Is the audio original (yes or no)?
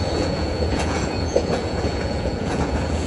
no